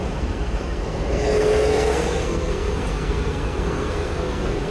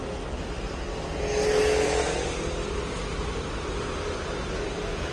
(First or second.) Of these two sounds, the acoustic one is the second